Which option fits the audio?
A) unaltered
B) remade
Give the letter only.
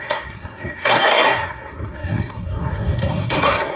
B